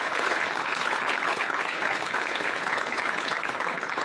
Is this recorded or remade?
remade